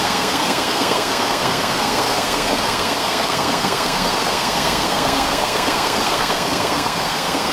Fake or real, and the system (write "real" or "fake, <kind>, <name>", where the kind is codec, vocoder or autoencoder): fake, codec, SNAC